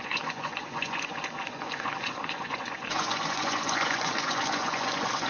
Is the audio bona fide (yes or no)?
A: no